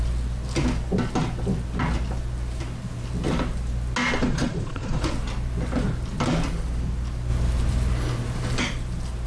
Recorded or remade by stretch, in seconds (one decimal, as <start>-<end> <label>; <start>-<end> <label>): 0.0-4.2 recorded; 4.2-5.1 remade; 5.1-9.3 recorded